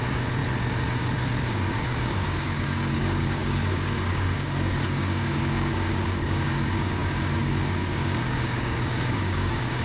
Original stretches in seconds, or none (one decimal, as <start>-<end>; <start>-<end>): 0.4-1.5